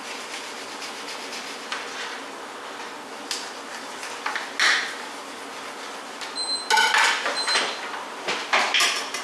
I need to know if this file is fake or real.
real